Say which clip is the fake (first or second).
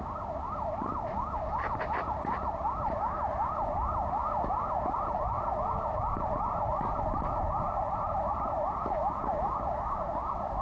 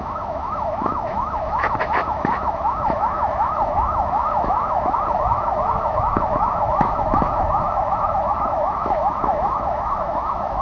second